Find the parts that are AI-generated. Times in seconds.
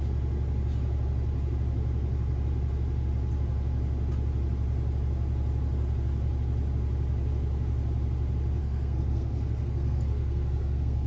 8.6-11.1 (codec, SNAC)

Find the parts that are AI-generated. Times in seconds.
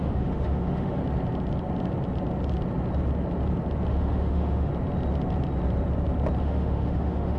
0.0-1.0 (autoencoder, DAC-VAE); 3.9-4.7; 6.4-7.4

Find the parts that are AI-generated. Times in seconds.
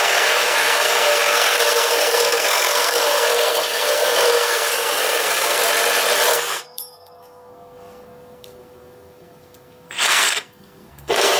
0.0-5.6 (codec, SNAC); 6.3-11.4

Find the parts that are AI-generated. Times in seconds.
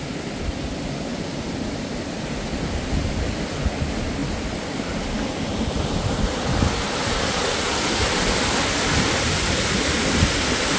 1.1-3.6 (vocoder, BigVGAN v2)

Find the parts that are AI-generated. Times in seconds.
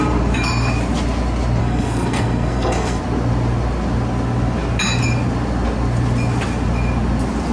1.6-3.0 (codec, SNAC)